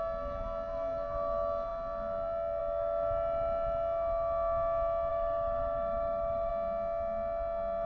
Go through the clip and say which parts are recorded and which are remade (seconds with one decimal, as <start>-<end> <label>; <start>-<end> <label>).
0.0-5.1 recorded; 5.1-6.5 remade; 6.5-7.9 recorded